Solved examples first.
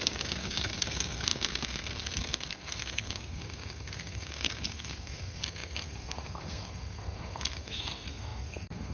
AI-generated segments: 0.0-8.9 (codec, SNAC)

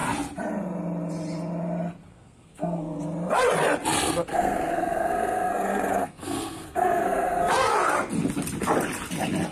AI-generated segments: 2.1-3.0 (codec, SNAC); 4.3-7.7

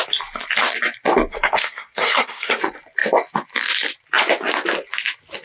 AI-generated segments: 1.3-2.6 (codec, SNAC)

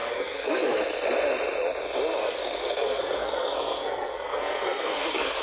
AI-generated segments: 0.0-0.8 (codec, SNAC); 2.2-5.4

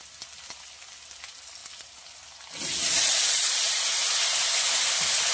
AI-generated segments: none

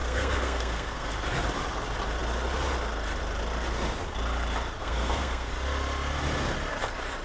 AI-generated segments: 0.0-1.1 (codec, SNAC); 4.8-5.5